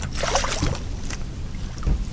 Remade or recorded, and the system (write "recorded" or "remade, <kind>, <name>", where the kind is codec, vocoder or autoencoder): remade, vocoder, BigVGAN v2